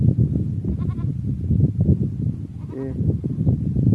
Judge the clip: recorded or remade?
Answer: recorded